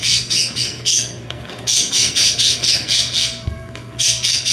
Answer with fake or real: fake